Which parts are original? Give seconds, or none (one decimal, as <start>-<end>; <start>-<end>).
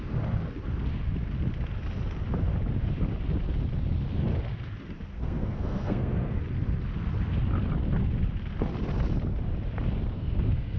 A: 0.0-5.1; 6.4-10.1